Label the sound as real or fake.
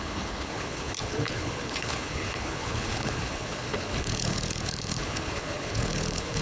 fake